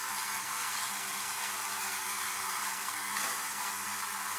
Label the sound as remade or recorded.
remade